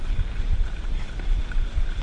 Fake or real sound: fake